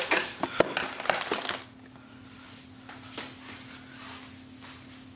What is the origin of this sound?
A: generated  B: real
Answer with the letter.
B